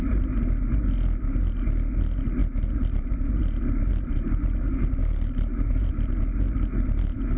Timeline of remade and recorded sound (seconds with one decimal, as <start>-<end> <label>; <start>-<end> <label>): 0.0-5.0 recorded; 5.0-5.9 remade; 5.9-7.4 recorded